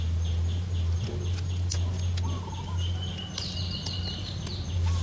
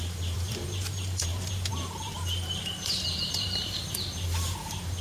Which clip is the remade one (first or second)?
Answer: second